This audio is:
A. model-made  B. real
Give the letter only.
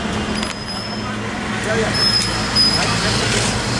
B